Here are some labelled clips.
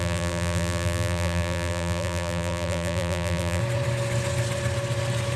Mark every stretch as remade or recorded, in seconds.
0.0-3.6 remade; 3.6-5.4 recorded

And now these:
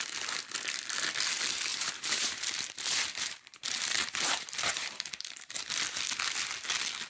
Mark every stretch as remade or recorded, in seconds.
0.0-1.7 recorded; 1.7-5.5 remade; 5.5-7.1 recorded

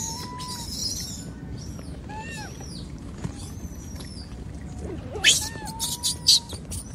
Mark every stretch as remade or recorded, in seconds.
0.0-0.8 recorded; 0.8-4.9 remade; 4.9-6.9 recorded

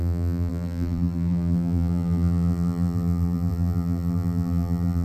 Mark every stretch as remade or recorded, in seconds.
0.0-5.0 remade